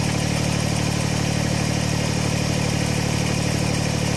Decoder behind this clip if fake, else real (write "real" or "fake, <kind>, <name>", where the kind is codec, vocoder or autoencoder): real